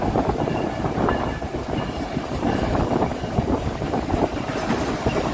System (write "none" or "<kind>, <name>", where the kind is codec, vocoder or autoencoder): vocoder, BigVGAN v2